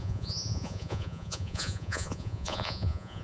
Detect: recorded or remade remade